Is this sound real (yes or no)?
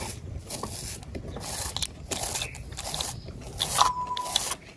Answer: yes